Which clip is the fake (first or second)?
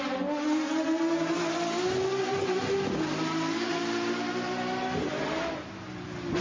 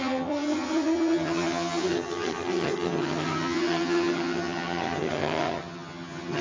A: second